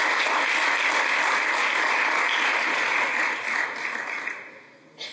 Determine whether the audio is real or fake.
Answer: real